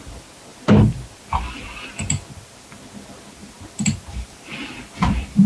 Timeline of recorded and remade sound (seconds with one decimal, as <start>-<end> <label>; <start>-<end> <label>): 0.0-5.5 recorded